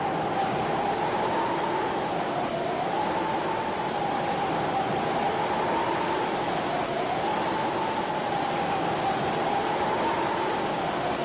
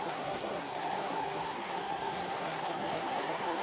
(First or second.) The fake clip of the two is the second